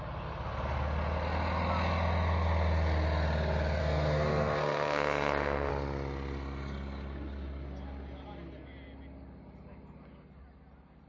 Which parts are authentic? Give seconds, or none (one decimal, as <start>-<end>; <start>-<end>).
0.0-3.8; 5.7-11.1